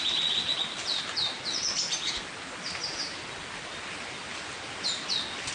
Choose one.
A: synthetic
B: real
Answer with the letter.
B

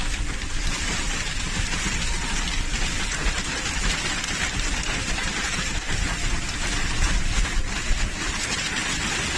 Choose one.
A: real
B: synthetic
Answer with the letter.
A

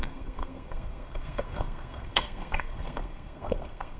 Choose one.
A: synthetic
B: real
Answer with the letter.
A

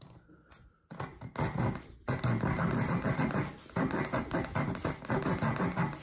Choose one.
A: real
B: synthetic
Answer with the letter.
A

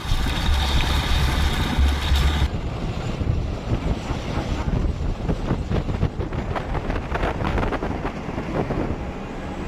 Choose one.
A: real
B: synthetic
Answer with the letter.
A